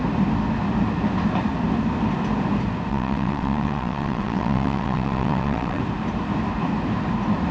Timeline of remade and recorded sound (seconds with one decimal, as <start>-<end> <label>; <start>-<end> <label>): 0.0-2.9 recorded; 2.9-5.8 remade; 5.8-7.5 recorded